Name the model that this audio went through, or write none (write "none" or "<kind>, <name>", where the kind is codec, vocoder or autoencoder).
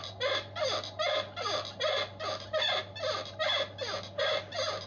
none